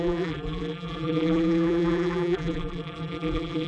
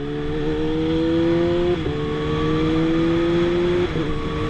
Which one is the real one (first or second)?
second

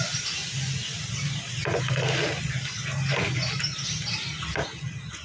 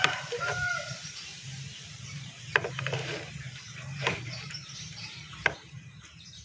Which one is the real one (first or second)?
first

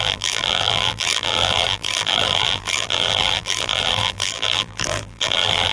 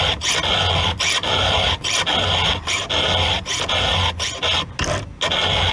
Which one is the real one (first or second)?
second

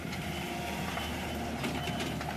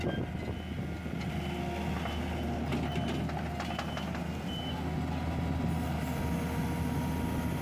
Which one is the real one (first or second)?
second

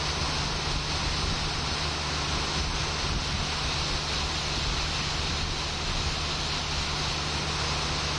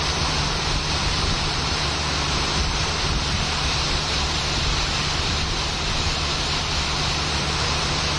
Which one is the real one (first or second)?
first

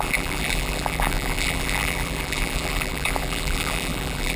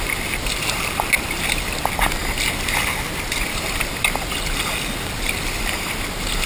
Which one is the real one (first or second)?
second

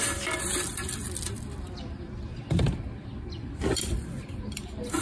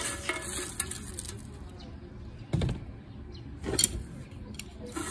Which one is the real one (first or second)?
second